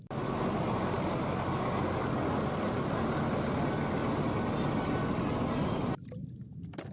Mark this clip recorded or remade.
recorded